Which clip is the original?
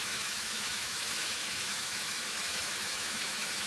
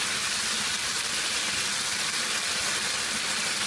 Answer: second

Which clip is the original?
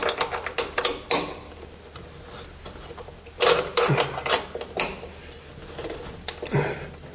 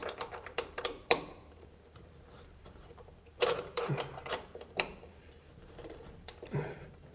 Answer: first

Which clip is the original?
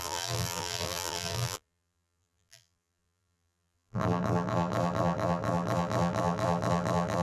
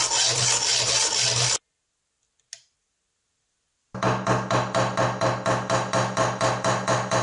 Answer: second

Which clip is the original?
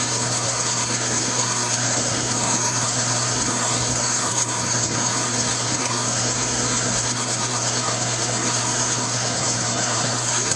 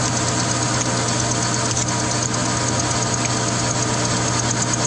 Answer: second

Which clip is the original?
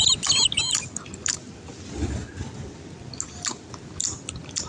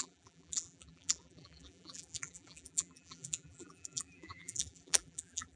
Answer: first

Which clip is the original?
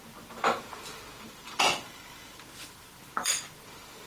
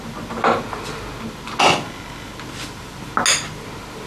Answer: second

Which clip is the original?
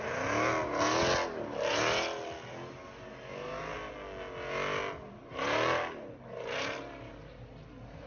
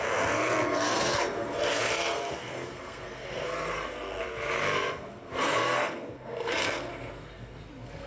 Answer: first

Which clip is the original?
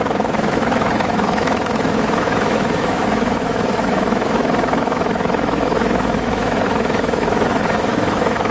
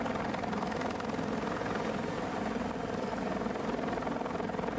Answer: second